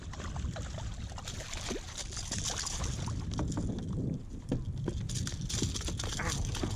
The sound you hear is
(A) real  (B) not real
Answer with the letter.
A